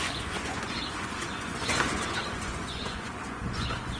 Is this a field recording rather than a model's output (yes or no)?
no